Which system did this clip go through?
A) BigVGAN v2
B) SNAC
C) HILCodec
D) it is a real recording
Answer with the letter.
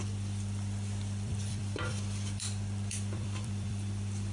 A